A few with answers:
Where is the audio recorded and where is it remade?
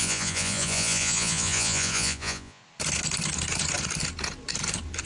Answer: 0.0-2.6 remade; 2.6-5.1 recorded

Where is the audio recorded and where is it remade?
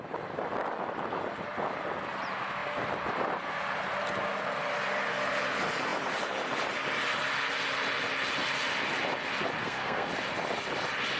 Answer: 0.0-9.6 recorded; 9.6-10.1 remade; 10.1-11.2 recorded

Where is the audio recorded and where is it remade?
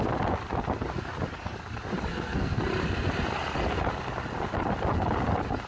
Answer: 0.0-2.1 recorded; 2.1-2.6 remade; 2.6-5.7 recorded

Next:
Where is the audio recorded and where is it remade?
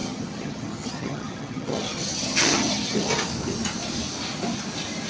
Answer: 0.0-3.1 remade; 3.1-5.1 recorded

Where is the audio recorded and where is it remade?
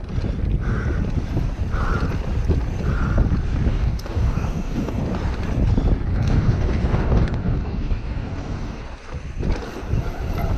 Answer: 0.0-3.7 recorded; 3.7-5.0 remade; 5.0-6.1 recorded; 6.1-8.8 remade; 8.8-10.6 recorded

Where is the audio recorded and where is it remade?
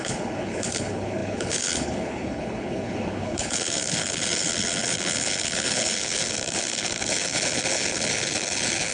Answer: 0.0-8.9 remade